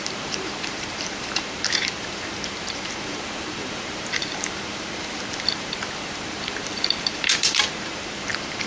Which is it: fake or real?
fake